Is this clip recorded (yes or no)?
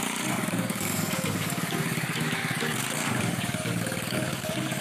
no